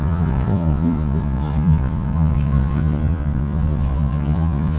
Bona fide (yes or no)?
no